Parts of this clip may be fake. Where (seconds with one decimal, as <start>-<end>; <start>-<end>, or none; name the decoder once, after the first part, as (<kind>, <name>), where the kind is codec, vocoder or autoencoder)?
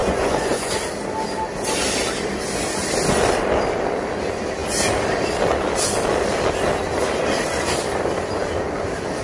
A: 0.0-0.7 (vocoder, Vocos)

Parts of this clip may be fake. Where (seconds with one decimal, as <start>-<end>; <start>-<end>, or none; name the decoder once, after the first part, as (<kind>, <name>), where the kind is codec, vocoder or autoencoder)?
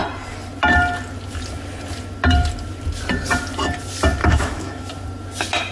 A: 4.2-4.9 (autoencoder, DAC-VAE)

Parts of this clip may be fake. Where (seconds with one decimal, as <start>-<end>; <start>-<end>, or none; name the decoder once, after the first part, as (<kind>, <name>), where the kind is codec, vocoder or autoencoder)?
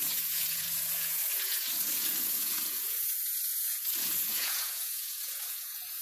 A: 0.0-6.0 (vocoder, Vocos)